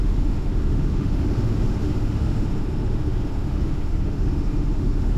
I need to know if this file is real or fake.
fake